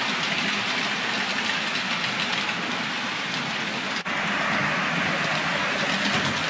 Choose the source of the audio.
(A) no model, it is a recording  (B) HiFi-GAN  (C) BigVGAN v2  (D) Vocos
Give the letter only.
A